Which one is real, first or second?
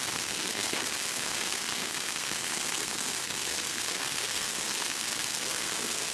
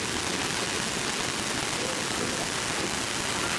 second